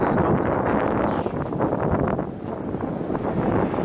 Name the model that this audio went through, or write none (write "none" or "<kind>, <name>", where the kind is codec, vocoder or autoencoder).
none